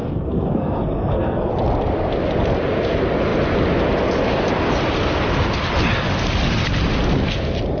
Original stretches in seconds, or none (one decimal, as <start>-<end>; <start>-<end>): 1.5-7.8